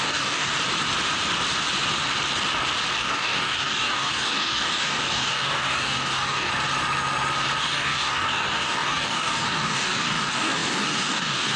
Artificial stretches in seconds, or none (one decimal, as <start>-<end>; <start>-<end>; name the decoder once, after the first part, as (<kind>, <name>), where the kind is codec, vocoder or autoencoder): 0.0-0.5 (codec, DAC); 3.0-6.5; 7.6-11.6

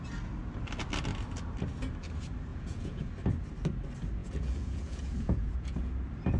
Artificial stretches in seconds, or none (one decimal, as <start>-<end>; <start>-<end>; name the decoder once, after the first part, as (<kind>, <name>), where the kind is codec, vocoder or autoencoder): 2.5-3.1 (vocoder, Vocos); 4.2-5.9

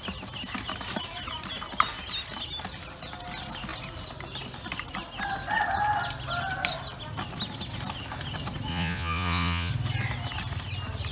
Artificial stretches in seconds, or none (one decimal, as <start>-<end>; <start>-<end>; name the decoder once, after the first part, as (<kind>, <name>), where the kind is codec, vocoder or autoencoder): 8.7-9.7 (vocoder, Vocos)

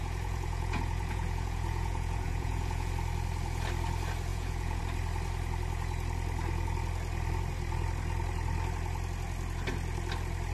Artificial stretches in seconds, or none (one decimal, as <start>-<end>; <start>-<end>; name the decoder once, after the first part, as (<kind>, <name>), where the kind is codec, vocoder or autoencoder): 0.0-2.9 (vocoder, Vocos); 4.3-4.8

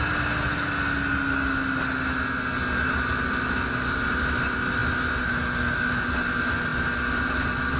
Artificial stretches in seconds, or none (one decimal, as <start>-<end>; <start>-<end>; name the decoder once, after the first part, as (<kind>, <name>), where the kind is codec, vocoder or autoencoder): none

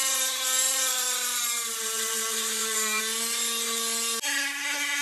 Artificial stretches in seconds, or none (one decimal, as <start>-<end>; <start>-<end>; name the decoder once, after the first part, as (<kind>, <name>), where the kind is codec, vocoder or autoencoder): 0.0-3.0 (vocoder, BigVGAN v2)